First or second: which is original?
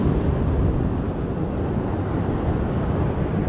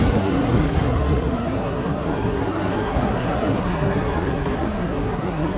first